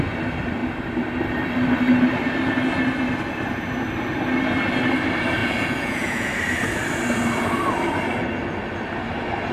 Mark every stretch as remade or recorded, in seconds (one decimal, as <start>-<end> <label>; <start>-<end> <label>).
0.0-5.4 recorded; 5.4-6.3 remade; 6.3-9.5 recorded